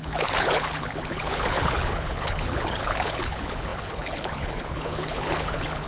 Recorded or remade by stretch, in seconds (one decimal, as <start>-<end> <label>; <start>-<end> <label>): 0.0-5.9 remade